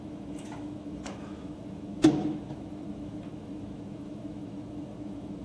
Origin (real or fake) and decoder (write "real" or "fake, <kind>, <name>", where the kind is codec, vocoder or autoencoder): fake, autoencoder, DAC-VAE